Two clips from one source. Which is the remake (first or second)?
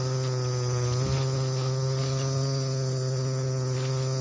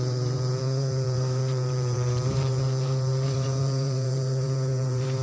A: second